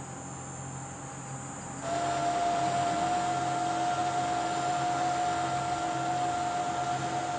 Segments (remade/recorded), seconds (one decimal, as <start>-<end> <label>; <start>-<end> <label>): 0.0-7.4 recorded